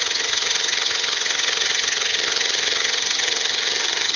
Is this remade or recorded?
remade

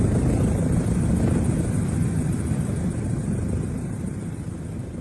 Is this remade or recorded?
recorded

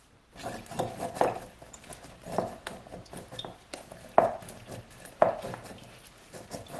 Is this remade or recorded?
recorded